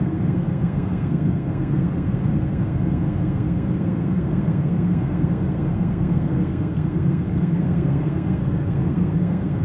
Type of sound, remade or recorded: remade